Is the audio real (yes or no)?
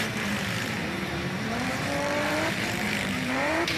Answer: no